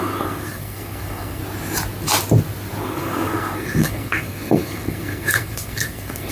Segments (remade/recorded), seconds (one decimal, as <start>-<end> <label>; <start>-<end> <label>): 0.0-1.4 remade; 1.4-2.8 recorded; 2.8-6.3 remade

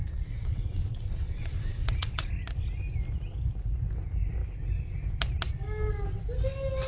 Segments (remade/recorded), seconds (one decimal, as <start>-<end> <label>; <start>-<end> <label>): 0.0-2.3 remade; 2.3-6.9 recorded

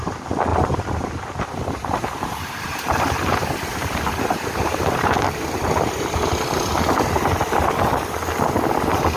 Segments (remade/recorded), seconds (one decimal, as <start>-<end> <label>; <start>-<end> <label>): 0.0-0.5 recorded; 0.5-5.1 remade; 5.1-9.2 recorded

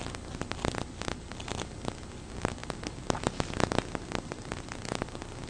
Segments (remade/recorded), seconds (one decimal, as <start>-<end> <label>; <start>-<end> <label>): 0.0-5.5 recorded

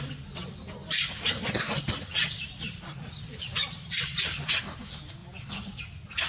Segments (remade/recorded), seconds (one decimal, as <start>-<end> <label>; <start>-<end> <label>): 0.0-0.8 recorded; 0.8-4.5 remade; 4.5-5.2 recorded; 5.2-5.8 remade; 5.8-6.3 recorded

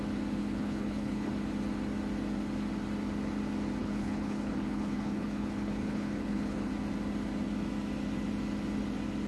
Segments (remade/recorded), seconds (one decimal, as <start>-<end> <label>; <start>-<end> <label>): 0.0-0.4 recorded; 0.4-1.3 remade; 1.3-3.8 recorded; 3.8-6.7 remade; 6.7-9.3 recorded

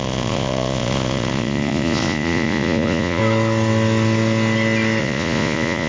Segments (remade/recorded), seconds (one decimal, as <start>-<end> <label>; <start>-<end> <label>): 0.0-3.2 remade; 3.2-5.0 recorded; 5.0-5.9 remade